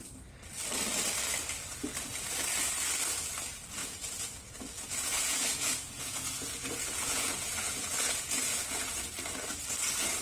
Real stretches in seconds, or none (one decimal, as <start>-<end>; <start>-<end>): 0.0-3.8; 9.1-10.2